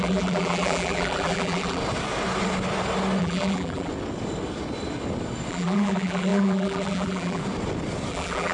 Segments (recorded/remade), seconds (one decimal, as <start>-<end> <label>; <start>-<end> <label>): 0.0-1.8 remade; 1.8-3.2 recorded; 3.2-3.9 remade; 3.9-5.5 recorded; 5.5-7.4 remade; 7.4-8.1 recorded; 8.1-8.5 remade